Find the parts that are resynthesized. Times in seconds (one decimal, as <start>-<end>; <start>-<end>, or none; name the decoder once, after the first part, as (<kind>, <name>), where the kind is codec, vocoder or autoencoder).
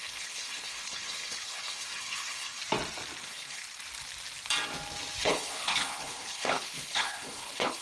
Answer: 0.0-2.6 (codec, HILCodec); 3.2-3.6; 5.2-7.8